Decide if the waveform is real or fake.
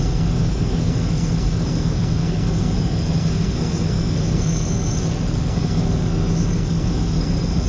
fake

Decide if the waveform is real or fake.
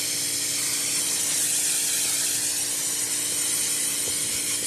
real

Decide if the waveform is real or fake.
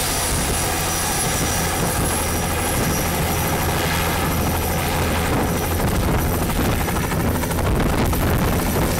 real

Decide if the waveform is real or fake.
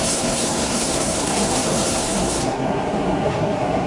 fake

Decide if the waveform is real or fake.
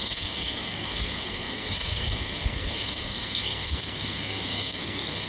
fake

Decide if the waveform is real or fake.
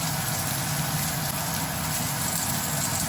real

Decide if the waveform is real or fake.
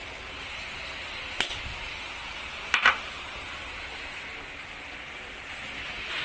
real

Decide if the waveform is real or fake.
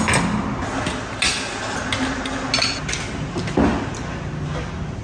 real